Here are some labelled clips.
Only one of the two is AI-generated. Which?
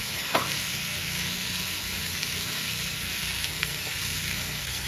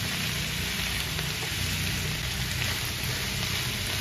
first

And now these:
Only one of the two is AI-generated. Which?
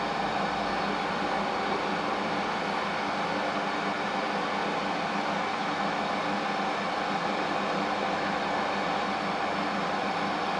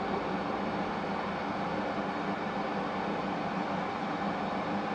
second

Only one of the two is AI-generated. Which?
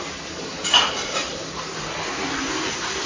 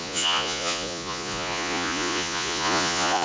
second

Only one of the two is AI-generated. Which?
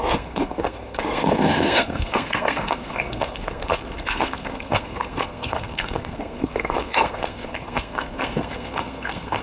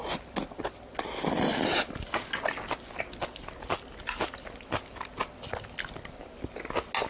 first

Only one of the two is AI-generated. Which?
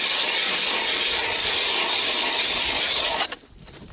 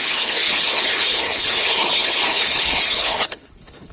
second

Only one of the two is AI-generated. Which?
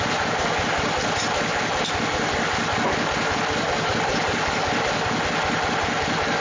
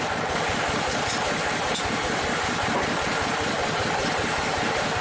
second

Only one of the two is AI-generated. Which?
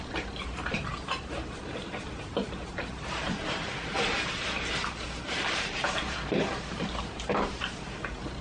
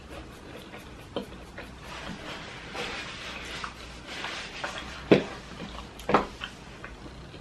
first